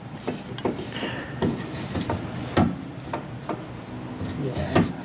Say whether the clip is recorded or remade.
recorded